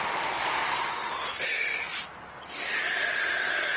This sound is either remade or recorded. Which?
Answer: recorded